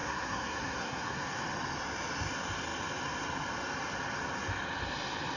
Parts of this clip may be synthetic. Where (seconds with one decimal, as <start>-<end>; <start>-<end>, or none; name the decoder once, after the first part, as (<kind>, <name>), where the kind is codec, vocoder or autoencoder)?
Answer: 0.0-1.4 (codec, SNAC)